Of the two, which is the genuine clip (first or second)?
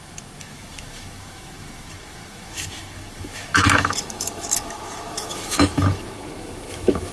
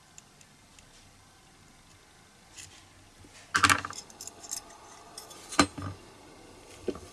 second